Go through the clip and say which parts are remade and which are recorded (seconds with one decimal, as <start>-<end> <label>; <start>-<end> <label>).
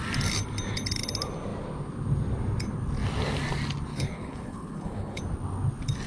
0.0-3.9 recorded; 3.9-5.2 remade; 5.2-6.1 recorded